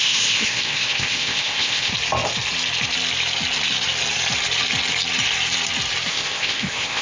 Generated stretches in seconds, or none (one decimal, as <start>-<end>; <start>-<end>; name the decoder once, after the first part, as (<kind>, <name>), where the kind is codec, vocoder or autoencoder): 0.0-1.9 (codec, ZipCodec); 6.1-7.0